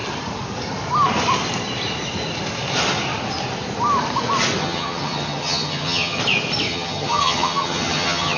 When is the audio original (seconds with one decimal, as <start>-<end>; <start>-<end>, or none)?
0.0-4.6; 6.2-6.7